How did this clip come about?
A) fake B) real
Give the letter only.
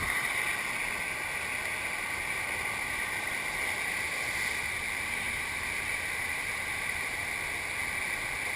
B